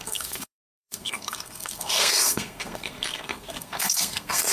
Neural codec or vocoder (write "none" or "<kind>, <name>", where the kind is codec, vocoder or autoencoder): codec, SNAC